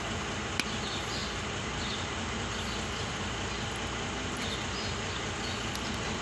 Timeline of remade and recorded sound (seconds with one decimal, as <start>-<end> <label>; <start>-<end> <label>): 0.0-1.2 recorded; 1.2-2.5 remade; 2.5-6.2 recorded